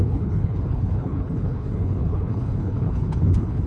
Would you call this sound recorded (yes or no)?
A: no